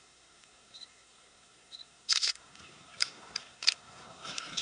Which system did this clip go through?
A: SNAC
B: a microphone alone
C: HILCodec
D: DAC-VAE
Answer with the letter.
A